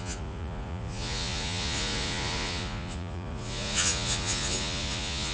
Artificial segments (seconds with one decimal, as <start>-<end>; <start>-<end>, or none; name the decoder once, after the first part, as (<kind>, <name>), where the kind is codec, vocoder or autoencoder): 0.0-5.3 (vocoder, Vocos)